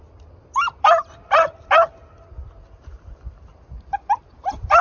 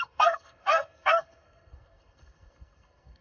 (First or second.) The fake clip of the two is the second